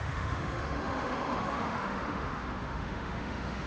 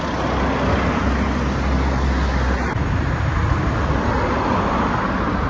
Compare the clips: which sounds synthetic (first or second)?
first